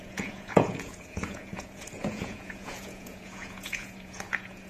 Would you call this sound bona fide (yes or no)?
no